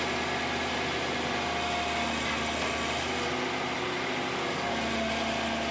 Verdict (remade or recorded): recorded